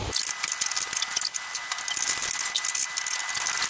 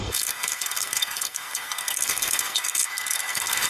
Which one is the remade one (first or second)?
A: second